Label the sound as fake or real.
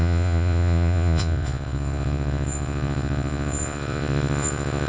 fake